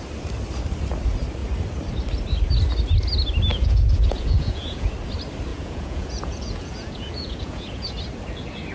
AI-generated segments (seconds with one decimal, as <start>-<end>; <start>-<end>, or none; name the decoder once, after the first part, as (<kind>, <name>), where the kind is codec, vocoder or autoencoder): 3.5-4.9 (vocoder, Vocos); 5.5-7.9